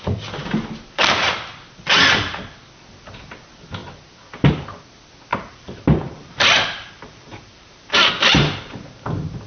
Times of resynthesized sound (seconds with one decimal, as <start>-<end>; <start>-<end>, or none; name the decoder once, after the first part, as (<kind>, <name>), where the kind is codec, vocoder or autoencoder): 5.3-8.6 (vocoder, BigVGAN v2)